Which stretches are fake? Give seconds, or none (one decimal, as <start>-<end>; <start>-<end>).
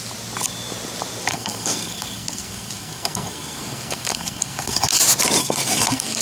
1.3-5.0; 5.4-6.2